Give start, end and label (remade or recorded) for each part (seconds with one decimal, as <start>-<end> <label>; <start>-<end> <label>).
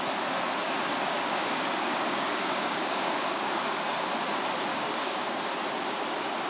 0.0-0.6 recorded; 0.6-4.1 remade; 4.1-4.7 recorded; 4.7-5.4 remade; 5.4-6.5 recorded